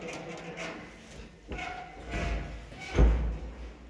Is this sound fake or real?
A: real